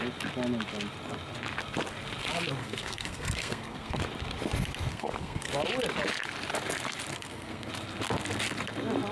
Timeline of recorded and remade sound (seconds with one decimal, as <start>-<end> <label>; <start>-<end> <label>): 0.0-2.6 recorded; 2.6-4.0 remade; 4.0-4.9 recorded; 4.9-5.5 remade; 5.5-7.1 recorded; 7.1-7.7 remade; 7.7-9.1 recorded